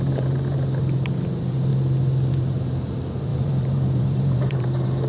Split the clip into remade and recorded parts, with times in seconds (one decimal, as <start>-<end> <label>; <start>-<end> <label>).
0.0-1.7 remade; 1.7-2.3 recorded; 2.3-5.1 remade